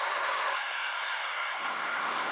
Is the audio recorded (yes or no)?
no